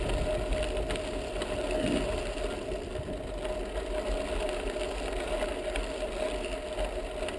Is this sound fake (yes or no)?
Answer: no